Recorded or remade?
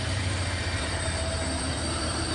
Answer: remade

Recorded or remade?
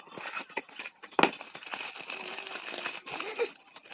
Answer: recorded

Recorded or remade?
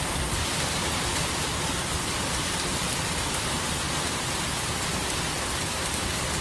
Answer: recorded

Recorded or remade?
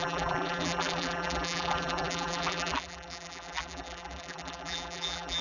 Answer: remade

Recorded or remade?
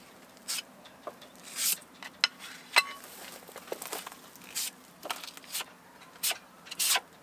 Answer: recorded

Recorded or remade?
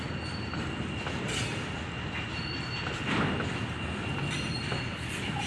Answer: recorded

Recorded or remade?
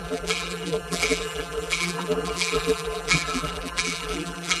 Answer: remade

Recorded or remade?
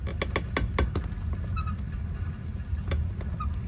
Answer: recorded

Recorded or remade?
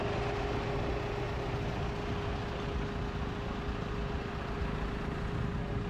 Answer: recorded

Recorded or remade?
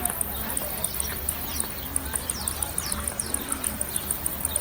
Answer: recorded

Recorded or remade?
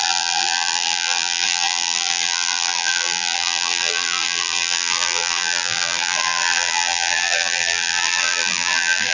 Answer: remade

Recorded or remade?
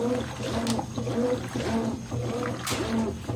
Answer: recorded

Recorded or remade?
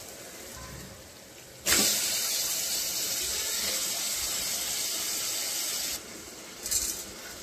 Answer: recorded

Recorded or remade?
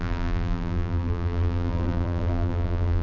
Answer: remade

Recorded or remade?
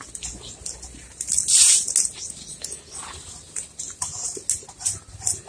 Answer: recorded